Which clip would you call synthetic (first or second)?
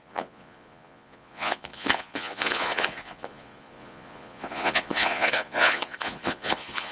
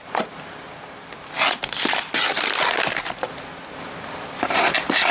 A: first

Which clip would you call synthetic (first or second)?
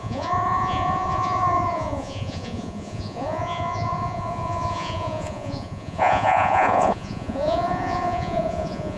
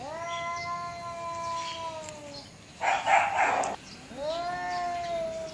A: first